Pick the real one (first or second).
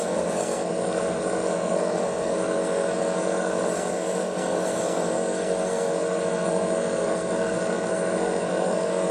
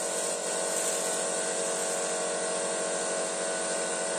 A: second